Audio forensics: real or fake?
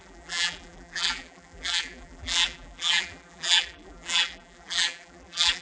fake